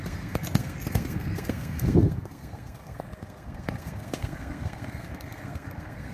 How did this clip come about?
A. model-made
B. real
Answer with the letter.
A